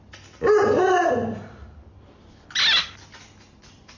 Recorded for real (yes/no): yes